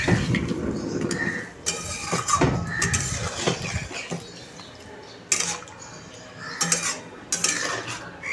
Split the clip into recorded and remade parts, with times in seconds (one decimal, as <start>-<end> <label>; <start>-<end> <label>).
0.0-8.3 recorded